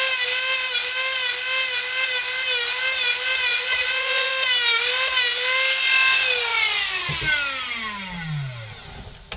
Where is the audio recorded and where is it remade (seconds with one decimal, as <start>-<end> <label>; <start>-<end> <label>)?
0.0-3.5 recorded; 3.5-4.3 remade; 4.3-6.5 recorded; 6.5-7.1 remade; 7.1-9.4 recorded